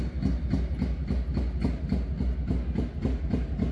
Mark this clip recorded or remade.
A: recorded